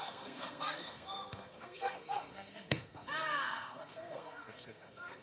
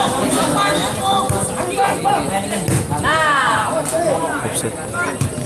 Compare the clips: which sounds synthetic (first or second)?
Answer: first